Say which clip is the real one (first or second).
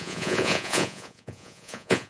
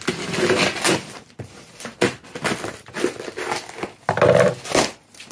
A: second